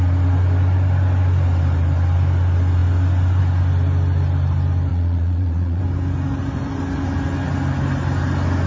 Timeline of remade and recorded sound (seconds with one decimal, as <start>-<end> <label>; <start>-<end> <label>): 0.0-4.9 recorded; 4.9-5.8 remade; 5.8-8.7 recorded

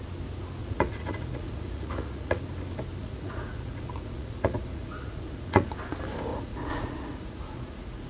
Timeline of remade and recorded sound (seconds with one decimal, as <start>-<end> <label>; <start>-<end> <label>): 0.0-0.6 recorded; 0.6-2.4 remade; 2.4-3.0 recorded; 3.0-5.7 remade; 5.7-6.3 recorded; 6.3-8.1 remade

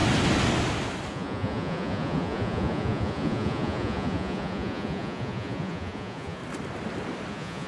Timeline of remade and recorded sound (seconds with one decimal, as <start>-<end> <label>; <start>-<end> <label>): 0.0-1.1 recorded; 1.1-6.4 remade; 6.4-7.3 recorded; 7.3-7.7 remade